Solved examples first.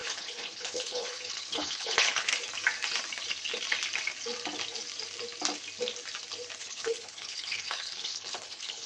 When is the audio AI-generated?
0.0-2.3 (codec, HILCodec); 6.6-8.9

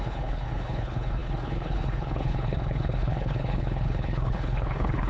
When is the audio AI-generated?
0.0-5.1 (codec, HILCodec)

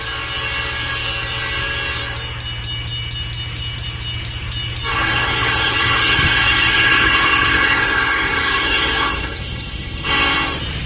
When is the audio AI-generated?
4.9-10.1 (codec, HILCodec)

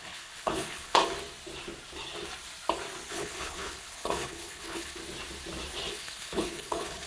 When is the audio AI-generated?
0.0-1.0 (codec, HILCodec); 3.1-5.0; 5.9-7.1